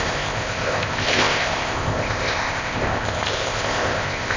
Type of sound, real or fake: fake